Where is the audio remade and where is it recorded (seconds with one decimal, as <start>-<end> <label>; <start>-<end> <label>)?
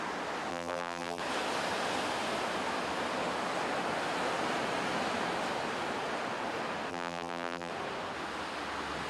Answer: 0.0-0.5 recorded; 0.5-1.2 remade; 1.2-6.9 recorded; 6.9-7.7 remade; 7.7-9.1 recorded